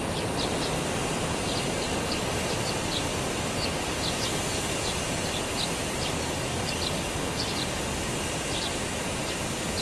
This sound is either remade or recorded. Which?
recorded